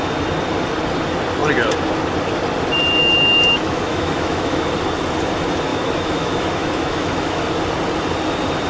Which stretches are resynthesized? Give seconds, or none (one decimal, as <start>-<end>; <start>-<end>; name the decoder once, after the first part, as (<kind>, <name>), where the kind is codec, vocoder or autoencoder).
3.0-4.7 (autoencoder, DAC-VAE); 5.7-7.4